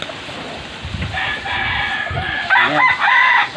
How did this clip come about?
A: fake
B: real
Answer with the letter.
B